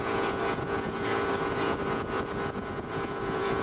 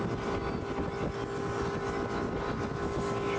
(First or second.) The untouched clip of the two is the second